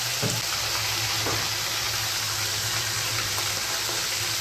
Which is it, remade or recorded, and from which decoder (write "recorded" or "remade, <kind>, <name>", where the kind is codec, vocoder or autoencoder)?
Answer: recorded